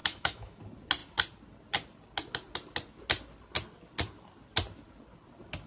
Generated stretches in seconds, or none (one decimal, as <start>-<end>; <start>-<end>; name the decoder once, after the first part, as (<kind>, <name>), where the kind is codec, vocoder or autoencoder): 0.0-0.6 (autoencoder, DAC-VAE)